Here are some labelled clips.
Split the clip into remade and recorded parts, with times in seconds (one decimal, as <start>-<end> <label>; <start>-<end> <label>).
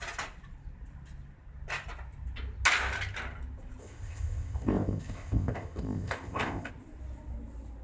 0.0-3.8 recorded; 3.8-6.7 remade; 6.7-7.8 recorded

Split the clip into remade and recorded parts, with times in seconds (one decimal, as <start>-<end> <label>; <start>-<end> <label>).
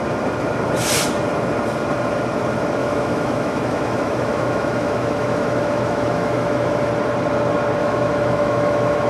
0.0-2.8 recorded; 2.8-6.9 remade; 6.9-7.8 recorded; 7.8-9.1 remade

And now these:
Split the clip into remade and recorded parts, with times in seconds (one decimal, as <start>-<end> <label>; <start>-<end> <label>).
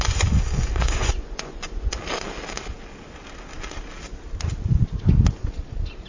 0.0-2.0 remade; 2.0-6.1 recorded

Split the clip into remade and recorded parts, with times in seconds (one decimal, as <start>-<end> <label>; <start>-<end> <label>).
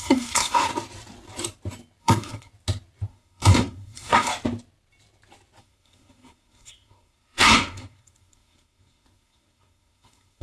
0.0-0.7 remade; 0.7-2.0 recorded; 2.0-2.5 remade; 2.5-3.1 recorded; 3.1-4.3 remade; 4.3-5.6 recorded; 5.6-10.4 remade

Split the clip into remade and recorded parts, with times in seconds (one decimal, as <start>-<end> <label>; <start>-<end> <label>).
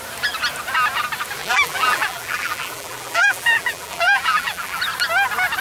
0.0-1.4 recorded; 1.4-4.8 remade; 4.8-5.6 recorded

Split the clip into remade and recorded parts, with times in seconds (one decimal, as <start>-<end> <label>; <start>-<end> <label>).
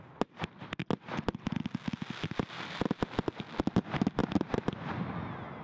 0.0-5.6 recorded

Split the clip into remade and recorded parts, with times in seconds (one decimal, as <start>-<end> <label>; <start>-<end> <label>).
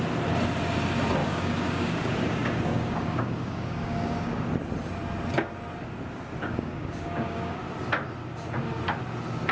0.0-1.2 recorded; 1.2-4.5 remade; 4.5-6.4 recorded; 6.4-7.6 remade; 7.6-9.5 recorded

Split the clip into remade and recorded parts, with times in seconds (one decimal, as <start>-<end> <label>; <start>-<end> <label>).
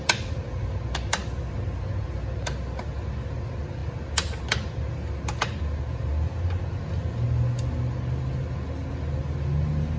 0.0-10.0 recorded